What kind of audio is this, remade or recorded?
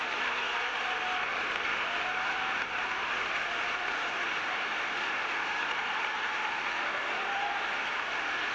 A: recorded